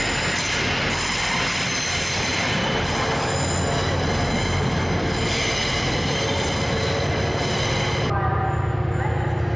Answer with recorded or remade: recorded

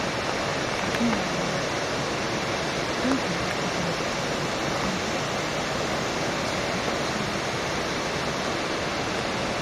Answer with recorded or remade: recorded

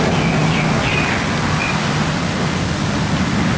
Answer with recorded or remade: recorded